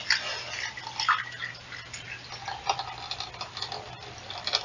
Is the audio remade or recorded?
recorded